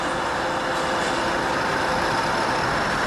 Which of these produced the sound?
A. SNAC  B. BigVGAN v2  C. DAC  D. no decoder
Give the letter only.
D